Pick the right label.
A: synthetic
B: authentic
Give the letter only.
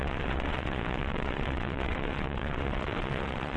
A